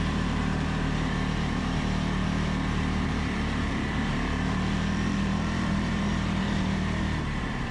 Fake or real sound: fake